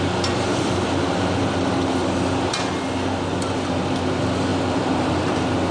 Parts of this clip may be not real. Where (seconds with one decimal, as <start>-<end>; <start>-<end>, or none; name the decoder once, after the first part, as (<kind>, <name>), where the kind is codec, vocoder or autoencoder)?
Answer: 0.5-1.4 (vocoder, BigVGAN v2); 4.5-5.3